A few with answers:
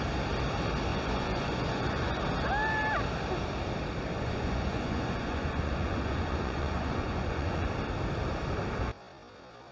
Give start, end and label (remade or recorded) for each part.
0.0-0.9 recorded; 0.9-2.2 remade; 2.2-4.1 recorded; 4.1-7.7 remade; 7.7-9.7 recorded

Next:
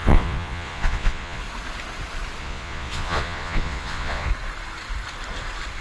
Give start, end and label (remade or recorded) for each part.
0.0-1.4 remade; 1.4-2.4 recorded; 2.4-4.3 remade; 4.3-5.8 recorded

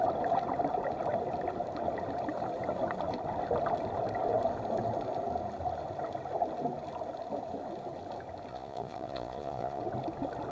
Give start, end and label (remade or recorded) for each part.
0.0-8.5 recorded; 8.5-9.8 remade; 9.8-10.5 recorded

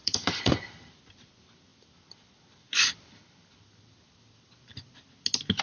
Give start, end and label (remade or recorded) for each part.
0.0-0.9 remade; 0.9-1.7 recorded; 1.7-5.1 remade; 5.1-5.6 recorded

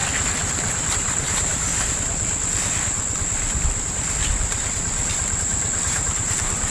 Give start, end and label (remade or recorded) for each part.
0.0-0.9 recorded; 0.9-1.7 remade; 1.7-5.4 recorded; 5.4-6.7 remade

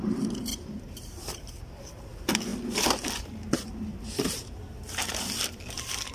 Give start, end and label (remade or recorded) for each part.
0.0-0.5 recorded; 0.5-1.6 remade; 1.6-3.9 recorded; 3.9-4.6 remade; 4.6-6.1 recorded

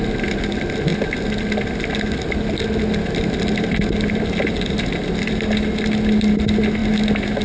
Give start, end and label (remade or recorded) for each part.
0.0-7.4 recorded